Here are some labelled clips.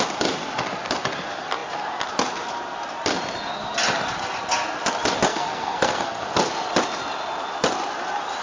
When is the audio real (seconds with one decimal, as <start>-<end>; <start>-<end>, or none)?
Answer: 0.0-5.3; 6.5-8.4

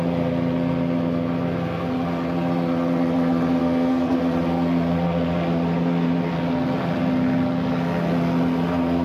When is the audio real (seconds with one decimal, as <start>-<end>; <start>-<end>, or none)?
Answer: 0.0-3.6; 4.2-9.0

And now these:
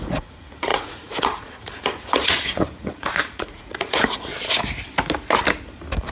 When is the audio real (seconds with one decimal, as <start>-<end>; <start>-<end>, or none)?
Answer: 4.3-6.1

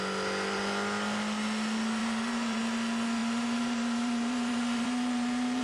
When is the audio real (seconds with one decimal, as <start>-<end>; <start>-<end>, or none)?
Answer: 0.0-2.0; 2.6-3.2

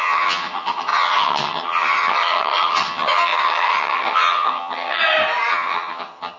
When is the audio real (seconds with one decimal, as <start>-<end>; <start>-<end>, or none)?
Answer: 5.0-5.5

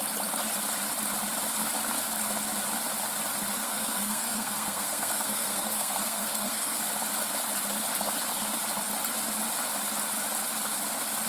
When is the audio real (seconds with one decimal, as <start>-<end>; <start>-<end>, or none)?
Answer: 0.0-3.5; 6.9-11.3

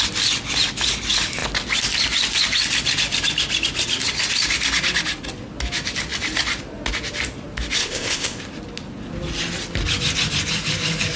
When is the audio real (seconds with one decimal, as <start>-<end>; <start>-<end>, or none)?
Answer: 0.0-7.8; 8.4-11.2